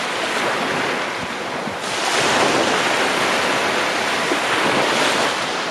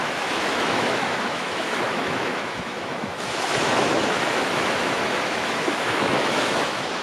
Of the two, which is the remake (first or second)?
second